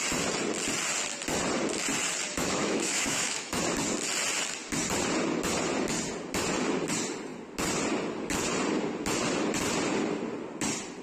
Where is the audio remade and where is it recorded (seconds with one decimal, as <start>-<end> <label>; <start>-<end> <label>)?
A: 0.0-2.3 recorded; 2.3-3.6 remade; 3.6-11.0 recorded

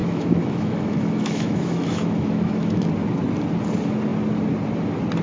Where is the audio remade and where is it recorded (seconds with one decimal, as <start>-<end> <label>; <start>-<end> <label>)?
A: 0.0-2.9 remade; 2.9-5.2 recorded